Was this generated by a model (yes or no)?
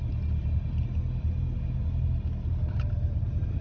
no